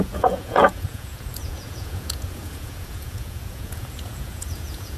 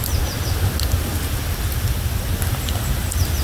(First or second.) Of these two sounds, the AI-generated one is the first